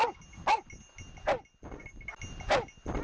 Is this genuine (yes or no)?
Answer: yes